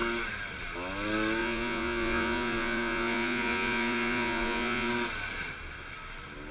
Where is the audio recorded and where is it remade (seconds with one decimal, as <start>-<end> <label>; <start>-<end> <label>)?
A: 0.0-1.4 recorded; 1.4-4.9 remade; 4.9-6.5 recorded